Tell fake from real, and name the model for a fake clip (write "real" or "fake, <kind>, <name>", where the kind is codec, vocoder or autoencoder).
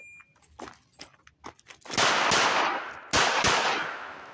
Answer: real